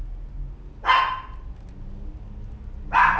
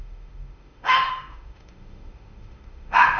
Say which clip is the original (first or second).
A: first